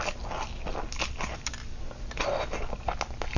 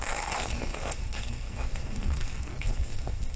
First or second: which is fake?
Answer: second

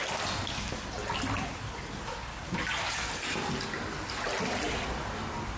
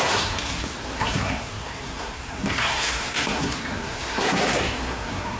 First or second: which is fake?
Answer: second